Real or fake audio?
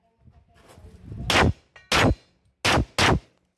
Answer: real